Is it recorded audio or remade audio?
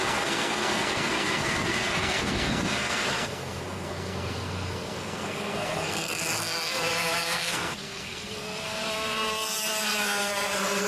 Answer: remade